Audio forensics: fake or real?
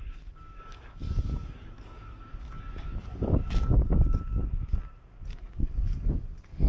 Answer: fake